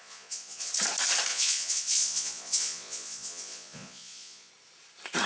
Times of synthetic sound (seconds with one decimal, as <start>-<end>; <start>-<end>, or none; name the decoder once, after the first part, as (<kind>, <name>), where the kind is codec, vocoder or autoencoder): 0.0-0.7 (vocoder, Vocos); 1.3-4.5